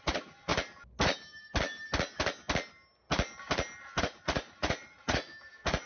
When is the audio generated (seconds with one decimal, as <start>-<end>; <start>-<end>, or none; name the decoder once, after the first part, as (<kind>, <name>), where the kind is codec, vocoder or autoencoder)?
0.0-0.5 (vocoder, Vocos); 4.0-5.3

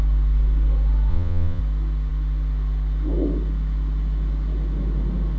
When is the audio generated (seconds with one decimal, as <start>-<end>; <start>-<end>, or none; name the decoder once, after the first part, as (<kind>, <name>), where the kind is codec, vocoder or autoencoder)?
1.1-1.6 (vocoder, Vocos)